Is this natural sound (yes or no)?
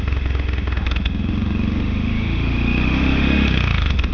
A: no